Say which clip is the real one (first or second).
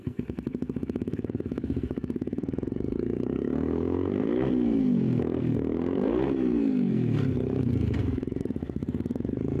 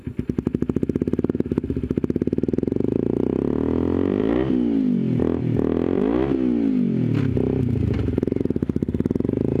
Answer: second